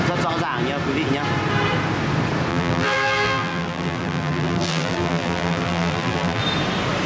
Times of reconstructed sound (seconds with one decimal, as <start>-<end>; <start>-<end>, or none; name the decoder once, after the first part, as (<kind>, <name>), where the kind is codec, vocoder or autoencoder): 2.5-6.4 (vocoder, BigVGAN v2)